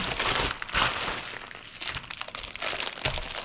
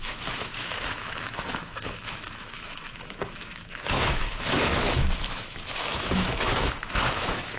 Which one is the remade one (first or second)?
second